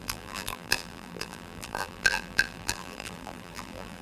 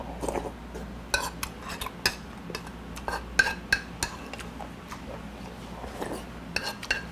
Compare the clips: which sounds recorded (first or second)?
second